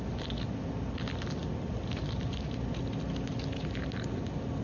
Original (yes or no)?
yes